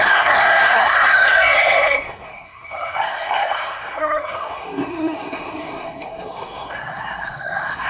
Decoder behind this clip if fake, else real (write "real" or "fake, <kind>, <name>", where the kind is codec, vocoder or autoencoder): fake, codec, SNAC